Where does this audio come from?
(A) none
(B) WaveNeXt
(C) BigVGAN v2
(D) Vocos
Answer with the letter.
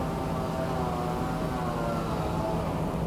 A